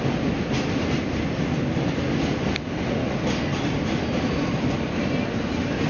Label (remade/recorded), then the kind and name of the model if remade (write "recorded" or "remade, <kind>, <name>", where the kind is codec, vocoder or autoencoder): recorded